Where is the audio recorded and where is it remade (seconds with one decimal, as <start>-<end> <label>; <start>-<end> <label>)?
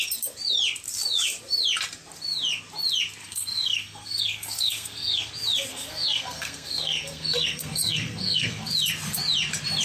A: 0.0-3.2 recorded; 3.2-5.3 remade; 5.3-5.7 recorded; 5.7-8.7 remade; 8.7-9.8 recorded